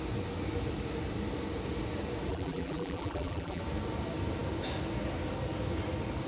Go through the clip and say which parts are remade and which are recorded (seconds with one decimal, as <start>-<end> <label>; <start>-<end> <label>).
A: 0.0-2.3 recorded; 2.3-3.6 remade; 3.6-6.3 recorded